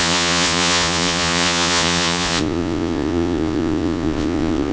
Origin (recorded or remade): remade